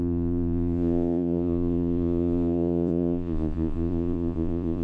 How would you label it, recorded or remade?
remade